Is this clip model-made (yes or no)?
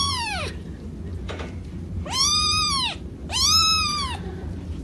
yes